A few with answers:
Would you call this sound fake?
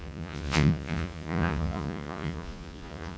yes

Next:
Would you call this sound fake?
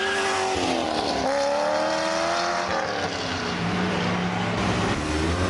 no